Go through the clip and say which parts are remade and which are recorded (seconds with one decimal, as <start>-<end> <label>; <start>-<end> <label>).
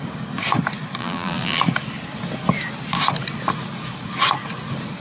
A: 0.0-1.0 recorded; 1.0-1.6 remade; 1.6-5.0 recorded